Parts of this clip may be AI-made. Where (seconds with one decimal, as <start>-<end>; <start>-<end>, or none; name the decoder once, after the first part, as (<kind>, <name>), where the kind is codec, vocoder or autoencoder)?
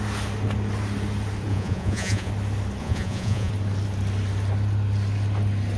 1.5-2.3 (vocoder, Vocos); 2.8-3.5